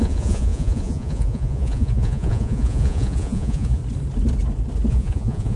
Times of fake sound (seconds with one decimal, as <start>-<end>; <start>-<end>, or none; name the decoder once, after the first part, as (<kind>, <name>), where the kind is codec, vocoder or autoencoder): 0.0-3.8 (vocoder, Vocos); 4.9-5.6